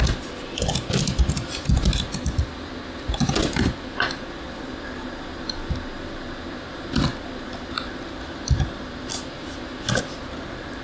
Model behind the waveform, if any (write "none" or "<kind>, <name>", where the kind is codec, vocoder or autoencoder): none